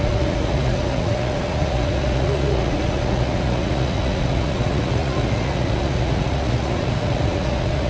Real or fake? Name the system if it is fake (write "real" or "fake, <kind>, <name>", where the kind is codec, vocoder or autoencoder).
fake, vocoder, Vocos